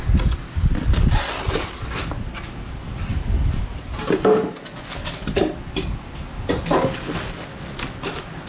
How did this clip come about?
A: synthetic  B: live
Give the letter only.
B